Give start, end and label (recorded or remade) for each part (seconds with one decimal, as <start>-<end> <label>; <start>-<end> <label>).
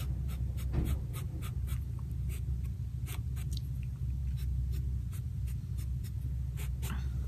0.0-7.3 recorded